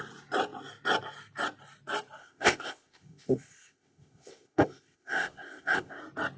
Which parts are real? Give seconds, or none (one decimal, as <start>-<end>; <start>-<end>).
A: 0.0-2.2; 6.0-6.4